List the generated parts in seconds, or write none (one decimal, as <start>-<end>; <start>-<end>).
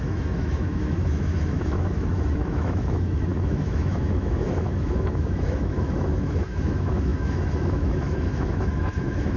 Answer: 0.0-9.4